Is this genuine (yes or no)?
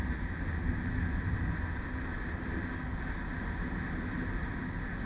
yes